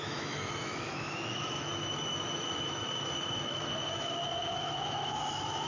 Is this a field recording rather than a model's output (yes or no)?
no